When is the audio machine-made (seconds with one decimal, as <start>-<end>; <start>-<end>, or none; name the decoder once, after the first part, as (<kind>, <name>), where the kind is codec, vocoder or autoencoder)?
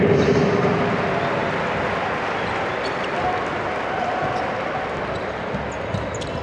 none